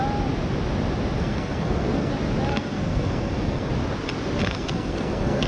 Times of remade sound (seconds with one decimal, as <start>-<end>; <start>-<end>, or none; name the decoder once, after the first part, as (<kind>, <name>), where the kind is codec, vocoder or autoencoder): 1.2-2.1 (codec, SNAC); 2.5-3.7; 4.4-5.5